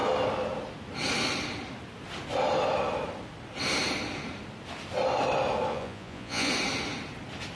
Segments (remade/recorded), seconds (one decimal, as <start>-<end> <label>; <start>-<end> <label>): 0.0-5.7 recorded; 5.7-6.5 remade; 6.5-7.6 recorded